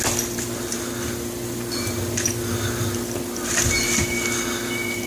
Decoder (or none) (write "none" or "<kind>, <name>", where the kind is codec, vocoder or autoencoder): none